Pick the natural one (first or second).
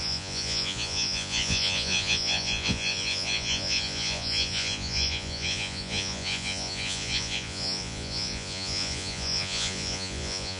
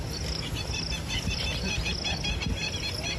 second